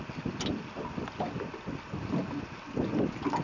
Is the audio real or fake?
real